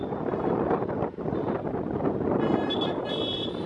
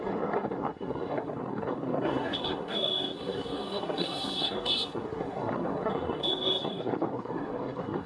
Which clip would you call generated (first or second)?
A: second